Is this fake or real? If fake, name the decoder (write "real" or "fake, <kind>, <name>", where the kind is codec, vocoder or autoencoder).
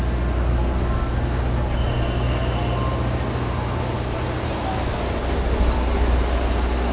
real